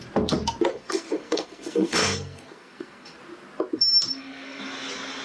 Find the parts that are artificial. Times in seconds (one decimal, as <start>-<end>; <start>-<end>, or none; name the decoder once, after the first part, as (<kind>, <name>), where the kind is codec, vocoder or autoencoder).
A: 0.7-3.2 (codec, SNAC); 4.1-4.6

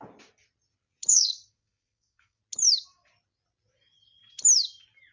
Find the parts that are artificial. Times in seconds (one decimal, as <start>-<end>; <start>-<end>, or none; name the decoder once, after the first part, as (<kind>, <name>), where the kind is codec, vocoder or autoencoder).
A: 1.1-2.4 (codec, SNAC)